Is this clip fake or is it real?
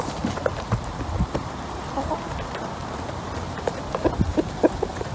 real